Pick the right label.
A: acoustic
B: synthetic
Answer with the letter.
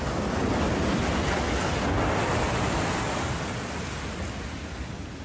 A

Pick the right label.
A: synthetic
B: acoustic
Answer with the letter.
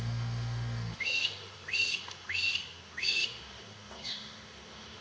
A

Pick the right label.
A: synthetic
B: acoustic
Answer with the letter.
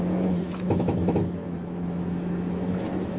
A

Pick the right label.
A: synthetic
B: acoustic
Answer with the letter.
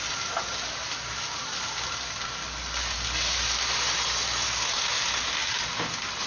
B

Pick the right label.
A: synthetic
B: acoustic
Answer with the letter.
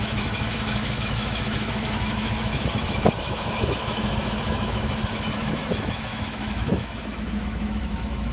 A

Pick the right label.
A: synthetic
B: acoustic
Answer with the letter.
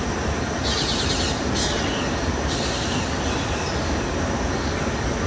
B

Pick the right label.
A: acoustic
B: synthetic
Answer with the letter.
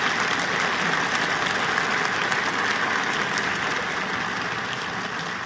A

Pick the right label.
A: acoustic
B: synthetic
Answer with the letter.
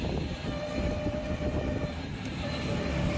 A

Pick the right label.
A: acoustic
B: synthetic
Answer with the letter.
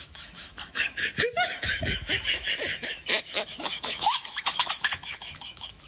B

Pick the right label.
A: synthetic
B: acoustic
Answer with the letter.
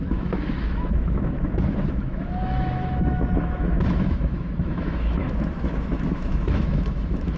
A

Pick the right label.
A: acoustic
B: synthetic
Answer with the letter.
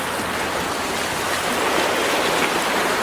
A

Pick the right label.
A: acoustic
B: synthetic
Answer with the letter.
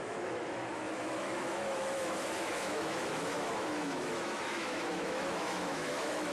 B